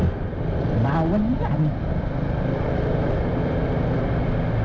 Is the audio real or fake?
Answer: real